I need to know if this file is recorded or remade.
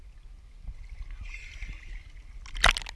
recorded